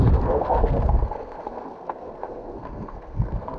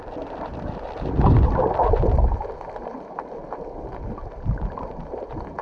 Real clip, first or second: second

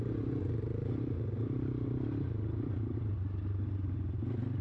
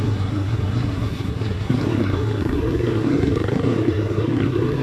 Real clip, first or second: first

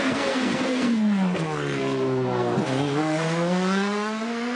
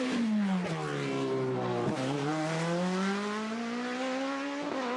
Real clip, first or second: second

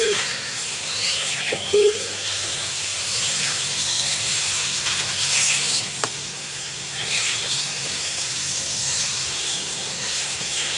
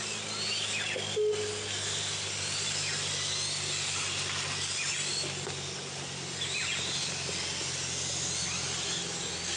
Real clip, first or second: second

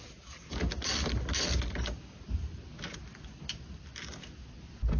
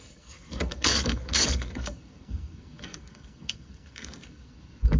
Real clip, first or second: first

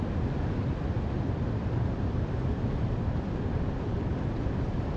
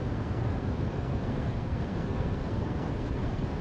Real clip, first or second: first